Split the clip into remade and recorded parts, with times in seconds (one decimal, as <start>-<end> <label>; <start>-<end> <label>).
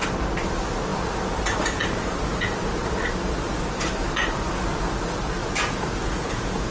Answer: 0.0-5.4 recorded; 5.4-6.7 remade